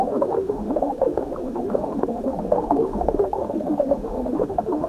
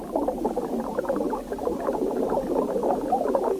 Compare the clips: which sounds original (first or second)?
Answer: second